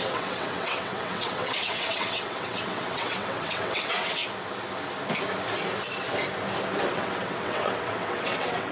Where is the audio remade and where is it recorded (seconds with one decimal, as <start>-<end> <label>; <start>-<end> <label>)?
0.0-4.2 remade; 4.2-6.9 recorded; 6.9-8.7 remade